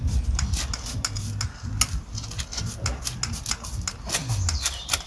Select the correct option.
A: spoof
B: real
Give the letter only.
B